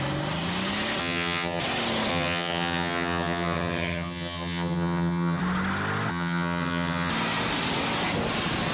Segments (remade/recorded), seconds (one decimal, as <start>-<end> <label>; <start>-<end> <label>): 0.0-1.0 recorded; 1.0-1.6 remade; 1.6-2.1 recorded; 2.1-5.4 remade; 5.4-6.1 recorded; 6.1-7.1 remade; 7.1-8.7 recorded